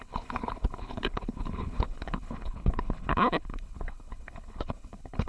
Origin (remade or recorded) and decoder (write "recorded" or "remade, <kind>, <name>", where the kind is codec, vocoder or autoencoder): remade, codec, HILCodec